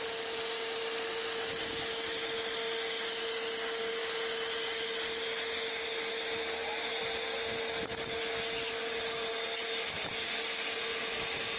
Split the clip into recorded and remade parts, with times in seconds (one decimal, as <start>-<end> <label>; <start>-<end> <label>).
0.0-11.6 recorded